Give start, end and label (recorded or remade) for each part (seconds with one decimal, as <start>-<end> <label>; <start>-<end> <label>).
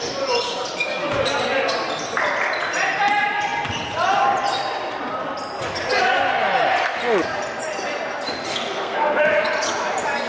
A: 0.0-8.5 recorded; 8.5-9.2 remade; 9.2-10.3 recorded